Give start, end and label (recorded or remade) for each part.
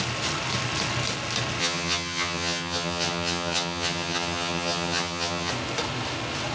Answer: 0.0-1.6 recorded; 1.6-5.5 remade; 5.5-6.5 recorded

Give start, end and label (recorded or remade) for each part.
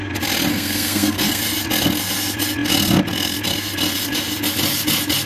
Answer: 0.0-0.5 recorded; 0.5-1.4 remade; 1.4-5.3 recorded